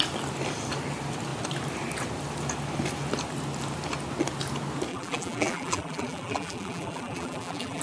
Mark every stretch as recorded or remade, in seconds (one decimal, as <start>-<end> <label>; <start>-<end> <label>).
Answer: 0.0-4.9 recorded; 4.9-7.8 remade

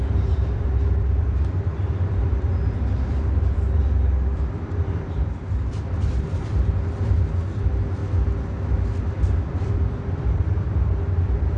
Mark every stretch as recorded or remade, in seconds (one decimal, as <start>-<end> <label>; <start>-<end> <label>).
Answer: 0.0-8.0 remade; 8.0-9.0 recorded; 9.0-11.6 remade

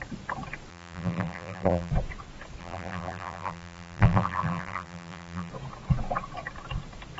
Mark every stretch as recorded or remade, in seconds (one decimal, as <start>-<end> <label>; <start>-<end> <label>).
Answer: 0.0-0.7 recorded; 0.7-1.9 remade; 1.9-2.6 recorded; 2.6-5.5 remade; 5.5-7.2 recorded

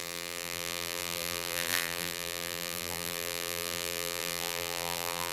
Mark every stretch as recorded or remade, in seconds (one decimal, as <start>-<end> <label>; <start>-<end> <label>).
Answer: 0.0-5.3 remade

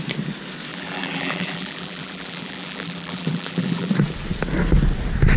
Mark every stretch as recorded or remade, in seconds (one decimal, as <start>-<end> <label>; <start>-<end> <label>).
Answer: 0.0-0.7 recorded; 0.7-3.9 remade; 3.9-5.4 recorded

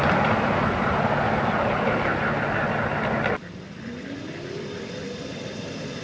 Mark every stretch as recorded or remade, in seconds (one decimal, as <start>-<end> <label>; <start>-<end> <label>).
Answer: 0.0-6.0 recorded

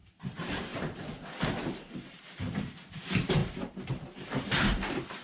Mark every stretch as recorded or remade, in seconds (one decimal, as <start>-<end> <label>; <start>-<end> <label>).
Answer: 0.0-0.7 remade; 0.7-2.2 recorded; 2.2-5.2 remade

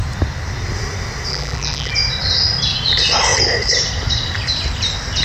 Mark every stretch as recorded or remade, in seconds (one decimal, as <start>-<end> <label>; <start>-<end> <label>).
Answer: 0.0-1.3 recorded; 1.3-1.9 remade; 1.9-5.2 recorded